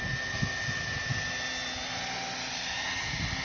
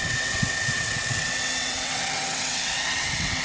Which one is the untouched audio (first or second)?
first